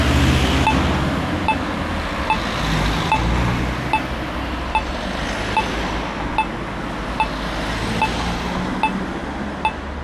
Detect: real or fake real